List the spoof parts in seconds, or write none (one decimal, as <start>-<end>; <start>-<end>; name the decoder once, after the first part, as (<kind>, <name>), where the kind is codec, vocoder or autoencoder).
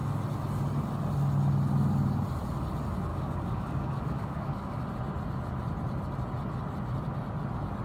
3.1-4.8 (codec, DAC)